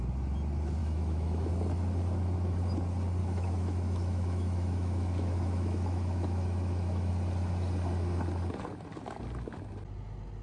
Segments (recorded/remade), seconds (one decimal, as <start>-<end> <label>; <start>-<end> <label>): 0.0-0.8 recorded; 0.8-1.5 remade; 1.5-3.2 recorded; 3.2-7.1 remade; 7.1-10.4 recorded